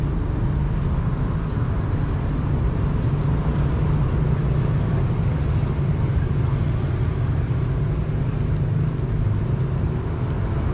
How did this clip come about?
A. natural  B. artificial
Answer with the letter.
A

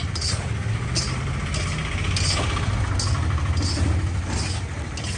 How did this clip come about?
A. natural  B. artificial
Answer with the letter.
A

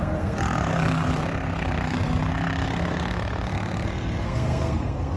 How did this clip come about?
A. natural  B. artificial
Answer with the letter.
B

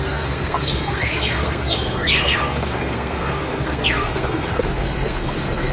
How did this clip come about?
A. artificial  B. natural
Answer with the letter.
A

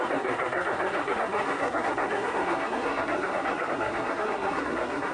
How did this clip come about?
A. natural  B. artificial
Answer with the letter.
B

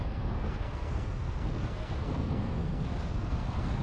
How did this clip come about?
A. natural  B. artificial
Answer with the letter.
B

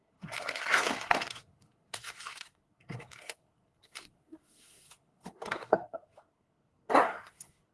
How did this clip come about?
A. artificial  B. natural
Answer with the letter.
A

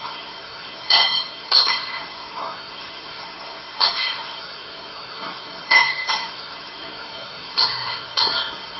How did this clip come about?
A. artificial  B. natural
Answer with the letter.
A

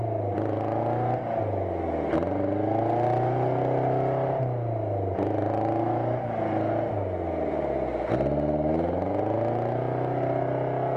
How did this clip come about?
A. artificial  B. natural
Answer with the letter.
B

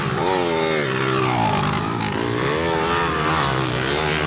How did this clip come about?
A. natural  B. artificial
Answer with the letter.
A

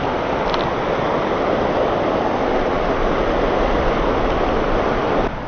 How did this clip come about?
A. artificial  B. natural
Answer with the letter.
B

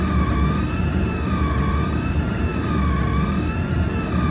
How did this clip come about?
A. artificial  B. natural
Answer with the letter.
B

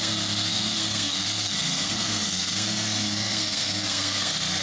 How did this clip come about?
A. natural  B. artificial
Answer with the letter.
B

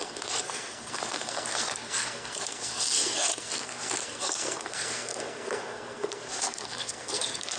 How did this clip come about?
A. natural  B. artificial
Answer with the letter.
B